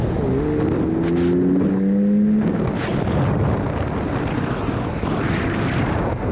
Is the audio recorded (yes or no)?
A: yes